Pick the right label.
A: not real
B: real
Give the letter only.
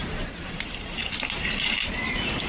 B